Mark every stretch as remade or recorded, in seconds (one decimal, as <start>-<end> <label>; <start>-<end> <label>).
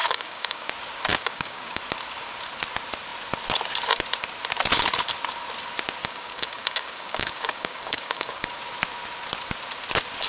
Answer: 0.0-0.7 remade; 0.7-1.1 recorded; 1.1-1.8 remade; 1.8-6.0 recorded; 6.0-8.5 remade; 8.5-10.3 recorded